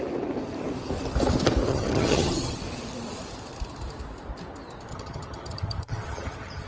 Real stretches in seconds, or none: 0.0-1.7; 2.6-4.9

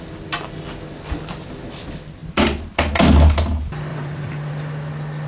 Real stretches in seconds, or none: 0.0-3.9; 4.5-5.3

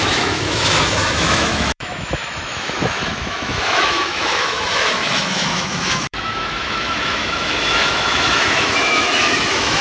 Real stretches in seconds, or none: none

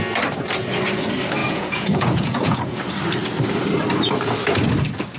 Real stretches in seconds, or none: 0.0-1.4; 2.8-5.2

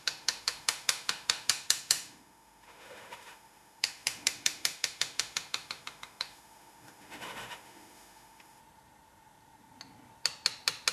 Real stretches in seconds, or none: 8.6-10.9

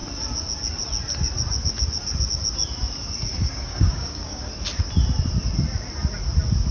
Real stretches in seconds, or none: 0.0-3.3; 4.5-6.7